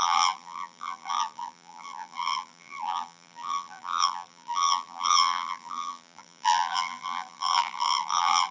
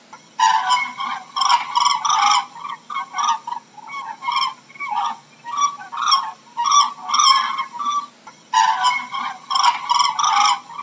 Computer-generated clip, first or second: first